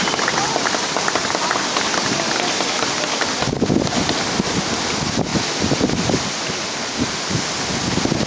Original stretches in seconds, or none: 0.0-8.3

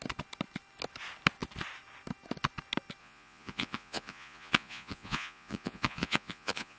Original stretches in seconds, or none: 0.0-3.0

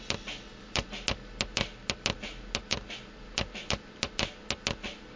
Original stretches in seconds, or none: 0.0-5.2